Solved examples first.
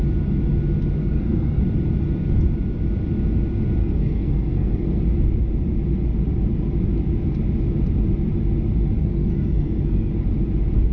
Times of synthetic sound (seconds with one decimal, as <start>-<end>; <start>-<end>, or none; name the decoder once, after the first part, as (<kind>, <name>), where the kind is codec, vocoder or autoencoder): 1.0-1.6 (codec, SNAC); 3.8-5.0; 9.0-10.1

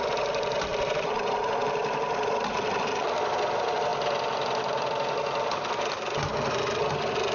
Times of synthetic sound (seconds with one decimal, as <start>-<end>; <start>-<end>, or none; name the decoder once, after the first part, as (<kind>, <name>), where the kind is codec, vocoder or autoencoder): 0.7-1.4 (vocoder, BigVGAN v2); 1.8-3.1

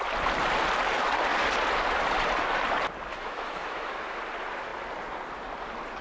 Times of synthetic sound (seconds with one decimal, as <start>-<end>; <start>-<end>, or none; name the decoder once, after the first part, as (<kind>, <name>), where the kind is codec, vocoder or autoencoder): 3.1-4.2 (autoencoder, DAC-VAE)